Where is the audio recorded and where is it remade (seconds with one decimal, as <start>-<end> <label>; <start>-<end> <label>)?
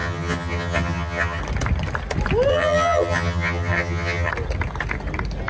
0.0-1.4 remade; 1.4-2.5 recorded; 2.5-4.3 remade; 4.3-5.5 recorded